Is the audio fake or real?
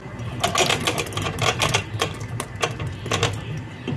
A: real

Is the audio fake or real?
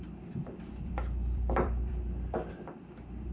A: fake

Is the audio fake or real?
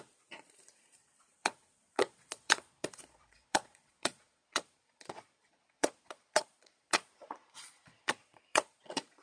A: fake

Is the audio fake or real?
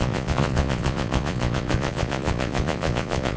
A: fake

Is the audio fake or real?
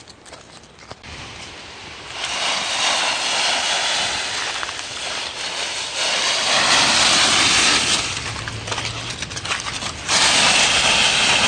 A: real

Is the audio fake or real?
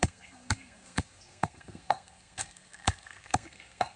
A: fake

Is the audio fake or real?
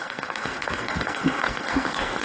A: fake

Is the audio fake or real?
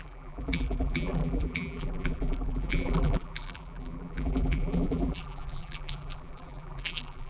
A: fake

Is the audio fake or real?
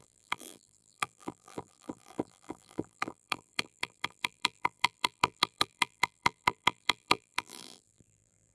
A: fake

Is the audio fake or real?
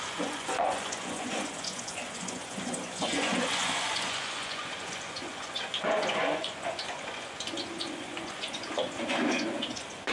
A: fake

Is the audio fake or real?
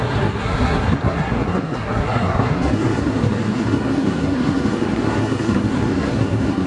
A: fake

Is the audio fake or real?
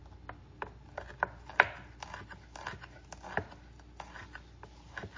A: real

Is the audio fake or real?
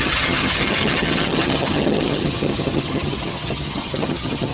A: fake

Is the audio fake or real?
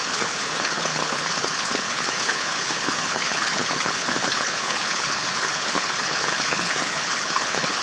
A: fake